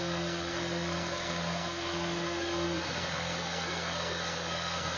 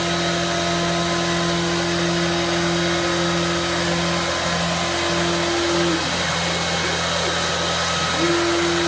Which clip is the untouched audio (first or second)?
second